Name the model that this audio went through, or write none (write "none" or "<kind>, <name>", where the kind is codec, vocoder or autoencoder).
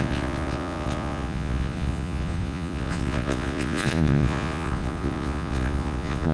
vocoder, Vocos